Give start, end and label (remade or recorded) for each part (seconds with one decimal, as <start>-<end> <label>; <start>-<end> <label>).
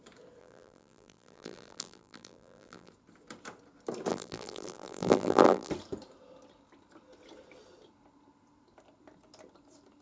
0.0-0.4 recorded; 0.4-2.9 remade; 2.9-4.1 recorded; 4.1-5.7 remade; 5.7-10.0 recorded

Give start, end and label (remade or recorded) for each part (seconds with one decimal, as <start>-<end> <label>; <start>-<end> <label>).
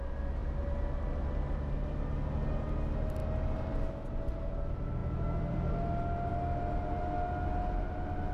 0.0-8.3 recorded